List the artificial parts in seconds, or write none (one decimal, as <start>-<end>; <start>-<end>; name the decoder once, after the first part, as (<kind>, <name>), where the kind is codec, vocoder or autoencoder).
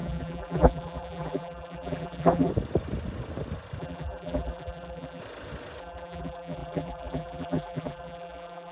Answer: 0.0-2.5 (vocoder, BigVGAN v2); 3.8-5.2; 5.8-8.7